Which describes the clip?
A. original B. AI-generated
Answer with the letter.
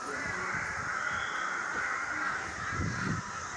A